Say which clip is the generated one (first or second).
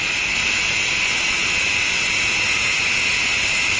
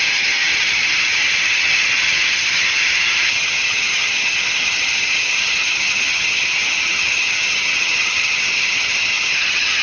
second